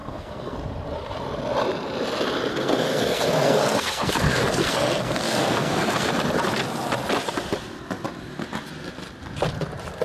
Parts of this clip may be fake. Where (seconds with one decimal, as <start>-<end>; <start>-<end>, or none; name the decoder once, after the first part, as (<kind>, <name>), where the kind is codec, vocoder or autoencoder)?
0.0-0.6 (codec, SNAC); 2.5-6.1